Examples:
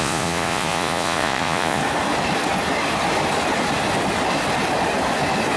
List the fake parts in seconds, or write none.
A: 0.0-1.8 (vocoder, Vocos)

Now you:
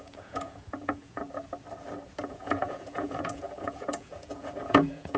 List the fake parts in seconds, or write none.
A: 0.0-1.2 (vocoder, Vocos); 2.2-5.2

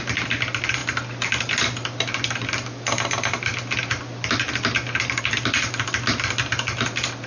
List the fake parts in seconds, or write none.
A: none